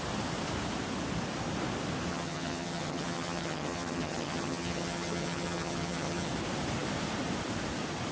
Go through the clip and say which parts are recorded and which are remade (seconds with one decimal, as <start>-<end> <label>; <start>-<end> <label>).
0.0-2.1 recorded; 2.1-6.3 remade; 6.3-8.1 recorded